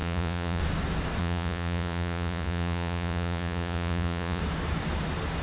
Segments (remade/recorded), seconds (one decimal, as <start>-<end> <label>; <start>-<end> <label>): 0.0-0.6 remade; 0.6-1.2 recorded; 1.2-4.4 remade; 4.4-5.4 recorded